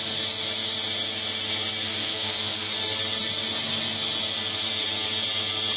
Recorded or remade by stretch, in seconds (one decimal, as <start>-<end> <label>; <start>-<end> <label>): 0.0-1.9 recorded; 1.9-2.7 remade; 2.7-5.8 recorded